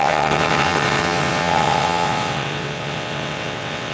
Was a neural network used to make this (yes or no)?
yes